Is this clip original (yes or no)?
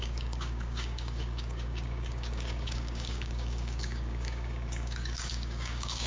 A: no